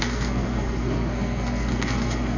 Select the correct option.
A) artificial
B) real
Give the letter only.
A